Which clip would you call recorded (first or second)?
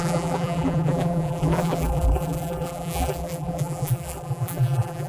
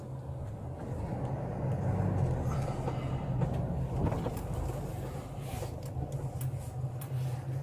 second